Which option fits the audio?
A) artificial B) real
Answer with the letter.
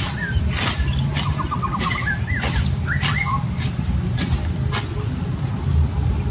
B